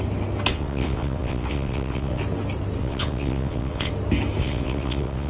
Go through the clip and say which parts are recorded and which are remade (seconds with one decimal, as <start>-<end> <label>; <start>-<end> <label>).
0.0-0.5 recorded; 0.5-2.2 remade; 2.2-2.8 recorded; 2.8-3.9 remade; 3.9-4.4 recorded; 4.4-5.3 remade